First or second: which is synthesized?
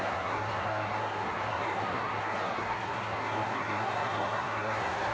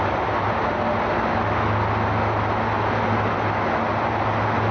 first